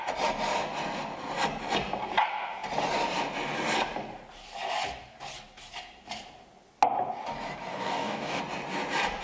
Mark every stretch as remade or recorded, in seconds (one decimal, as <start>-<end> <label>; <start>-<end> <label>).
0.0-7.7 recorded; 7.7-8.4 remade; 8.4-9.2 recorded